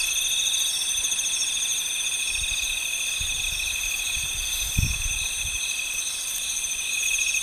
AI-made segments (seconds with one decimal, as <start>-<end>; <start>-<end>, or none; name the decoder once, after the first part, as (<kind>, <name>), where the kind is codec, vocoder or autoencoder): none